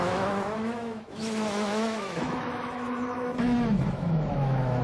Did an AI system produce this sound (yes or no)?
yes